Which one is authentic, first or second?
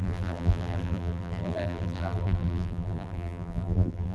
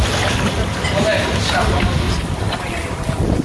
second